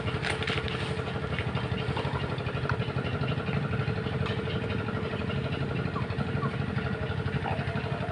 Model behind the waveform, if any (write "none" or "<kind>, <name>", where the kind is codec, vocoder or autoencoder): none